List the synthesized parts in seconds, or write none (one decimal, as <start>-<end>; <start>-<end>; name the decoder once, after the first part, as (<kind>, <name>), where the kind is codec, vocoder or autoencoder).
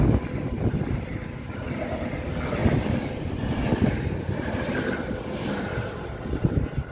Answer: none